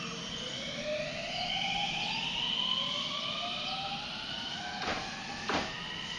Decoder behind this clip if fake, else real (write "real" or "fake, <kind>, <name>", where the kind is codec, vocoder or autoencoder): real